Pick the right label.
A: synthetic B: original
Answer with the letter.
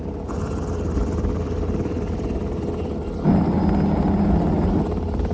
B